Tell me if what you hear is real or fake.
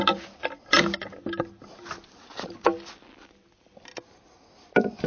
real